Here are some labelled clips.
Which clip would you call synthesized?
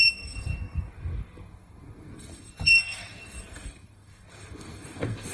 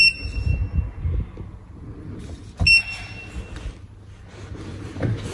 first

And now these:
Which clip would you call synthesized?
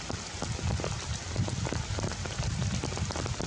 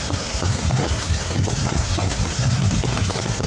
second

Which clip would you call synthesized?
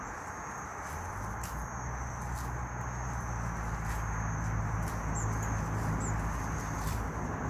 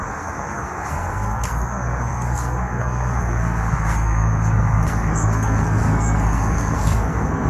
second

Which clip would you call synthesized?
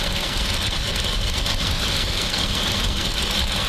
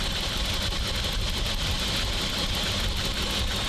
first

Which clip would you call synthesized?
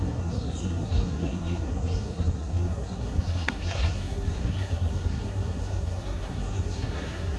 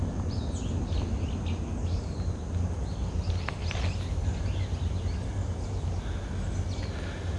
first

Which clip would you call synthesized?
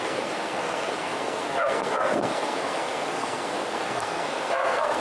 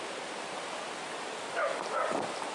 first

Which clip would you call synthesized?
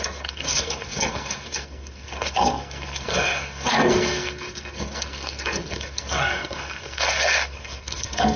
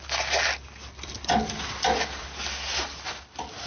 first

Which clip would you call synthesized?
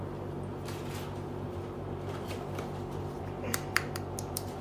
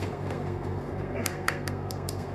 second